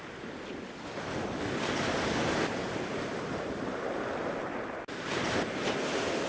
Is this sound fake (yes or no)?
no